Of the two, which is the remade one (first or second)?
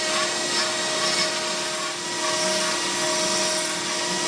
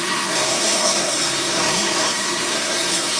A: second